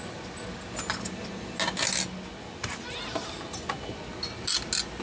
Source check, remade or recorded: recorded